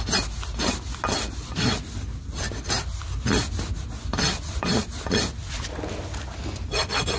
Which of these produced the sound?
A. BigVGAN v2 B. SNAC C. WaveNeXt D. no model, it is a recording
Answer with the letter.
D